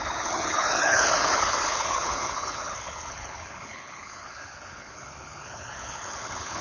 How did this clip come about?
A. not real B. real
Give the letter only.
A